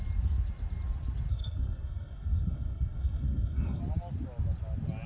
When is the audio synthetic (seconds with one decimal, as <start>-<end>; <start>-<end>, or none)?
1.3-3.8

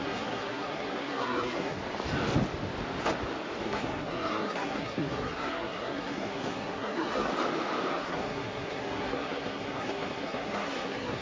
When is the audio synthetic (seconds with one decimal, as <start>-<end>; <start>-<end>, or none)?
0.0-1.8; 3.6-7.3; 7.9-11.2

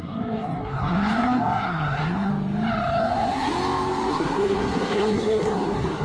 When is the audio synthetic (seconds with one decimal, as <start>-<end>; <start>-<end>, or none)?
0.0-2.3; 3.0-3.5; 4.1-6.0

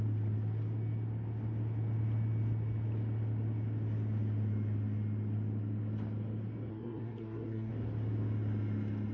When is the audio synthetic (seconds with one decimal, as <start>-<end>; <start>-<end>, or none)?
6.7-7.7

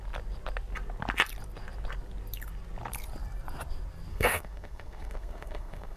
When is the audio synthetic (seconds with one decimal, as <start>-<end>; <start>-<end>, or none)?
4.1-6.0

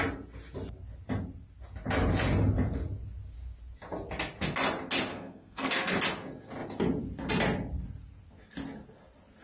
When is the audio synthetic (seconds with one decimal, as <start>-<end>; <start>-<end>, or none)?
5.1-5.9